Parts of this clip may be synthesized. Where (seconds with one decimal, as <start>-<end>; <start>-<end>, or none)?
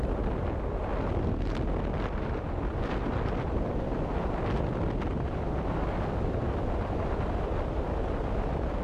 none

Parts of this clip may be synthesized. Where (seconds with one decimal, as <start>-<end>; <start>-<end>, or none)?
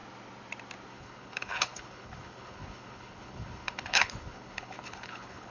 0.9-5.5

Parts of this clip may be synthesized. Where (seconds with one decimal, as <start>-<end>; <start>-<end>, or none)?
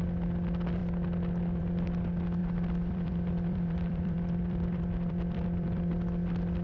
2.4-5.9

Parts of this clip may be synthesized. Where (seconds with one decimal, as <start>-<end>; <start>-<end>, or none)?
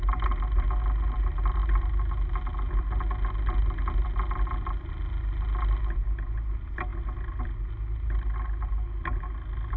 none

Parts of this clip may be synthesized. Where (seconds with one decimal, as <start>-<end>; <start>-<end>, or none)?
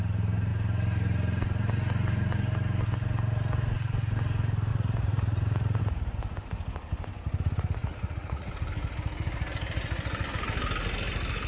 4.7-5.8; 7.8-8.5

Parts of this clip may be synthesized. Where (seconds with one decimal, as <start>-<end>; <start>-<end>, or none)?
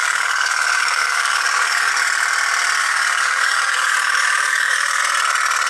0.0-1.9; 2.8-5.0